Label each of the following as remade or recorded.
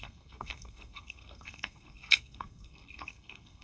remade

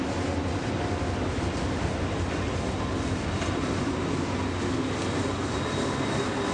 recorded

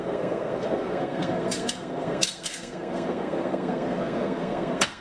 remade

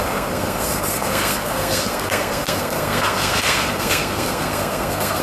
remade